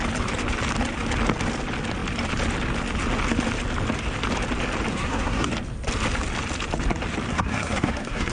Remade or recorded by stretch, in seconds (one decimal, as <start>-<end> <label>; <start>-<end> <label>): 0.0-4.9 recorded; 4.9-5.5 remade; 5.5-7.3 recorded; 7.3-8.3 remade